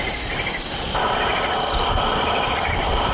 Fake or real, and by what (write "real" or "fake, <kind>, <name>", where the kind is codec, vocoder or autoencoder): real